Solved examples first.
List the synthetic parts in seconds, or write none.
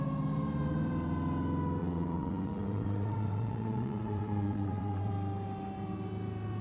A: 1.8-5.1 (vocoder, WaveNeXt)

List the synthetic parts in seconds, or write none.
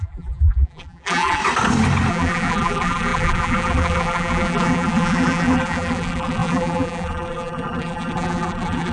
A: 0.0-1.4 (vocoder, BigVGAN v2); 2.1-8.9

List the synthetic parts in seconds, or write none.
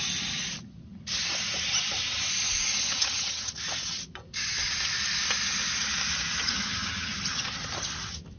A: 2.8-3.5 (vocoder, HiFi-GAN); 6.4-7.5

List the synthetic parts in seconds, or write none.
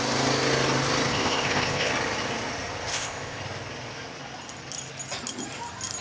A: 1.1-1.9 (codec, ZipCodec); 2.9-3.4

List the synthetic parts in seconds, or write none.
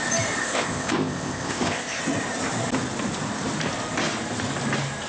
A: 0.4-2.0 (codec, ZipCodec)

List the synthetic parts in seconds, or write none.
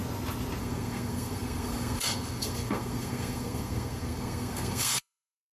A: 0.6-5.5 (codec, SNAC)